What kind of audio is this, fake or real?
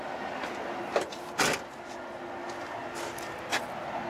real